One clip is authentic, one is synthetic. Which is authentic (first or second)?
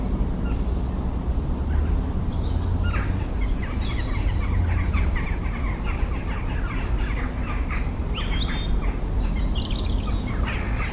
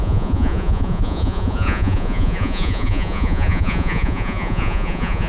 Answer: first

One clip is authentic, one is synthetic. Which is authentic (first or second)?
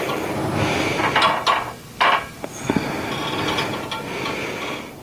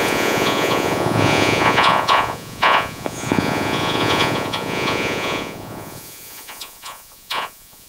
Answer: first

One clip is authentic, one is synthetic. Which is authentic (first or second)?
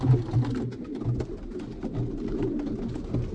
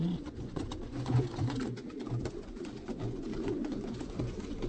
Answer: first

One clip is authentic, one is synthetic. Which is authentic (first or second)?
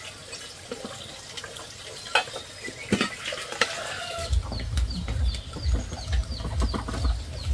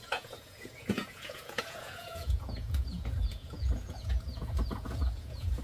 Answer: first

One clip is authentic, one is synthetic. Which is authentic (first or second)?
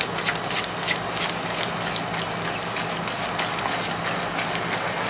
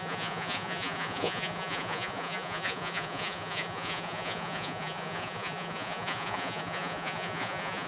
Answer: first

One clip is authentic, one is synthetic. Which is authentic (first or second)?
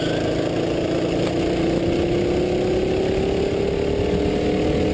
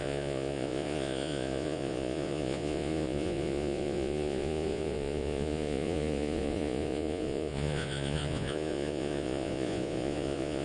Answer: first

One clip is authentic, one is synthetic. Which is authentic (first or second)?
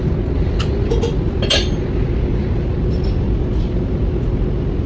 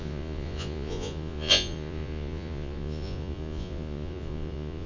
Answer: first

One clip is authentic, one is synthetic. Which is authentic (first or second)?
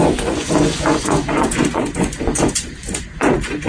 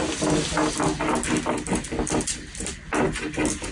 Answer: second